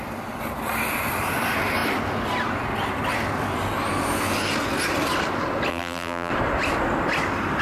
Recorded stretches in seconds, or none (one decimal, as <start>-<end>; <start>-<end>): 0.0-5.7; 6.3-7.6